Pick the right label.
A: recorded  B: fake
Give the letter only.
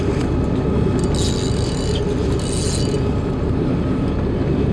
A